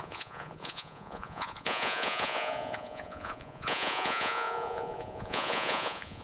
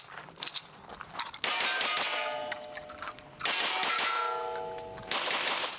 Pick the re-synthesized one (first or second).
first